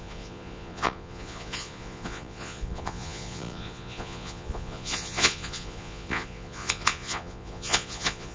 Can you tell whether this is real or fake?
fake